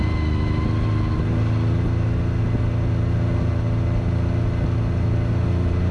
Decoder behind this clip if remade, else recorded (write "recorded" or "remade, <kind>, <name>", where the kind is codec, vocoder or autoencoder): recorded